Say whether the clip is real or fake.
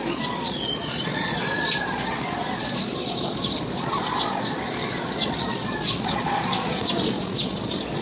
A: fake